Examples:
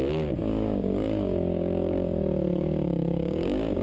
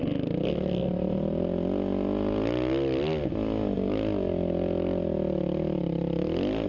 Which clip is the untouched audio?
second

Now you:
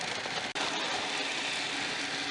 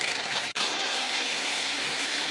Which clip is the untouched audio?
first